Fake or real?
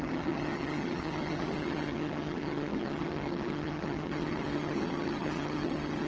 fake